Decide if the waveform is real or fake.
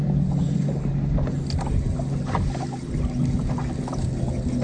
real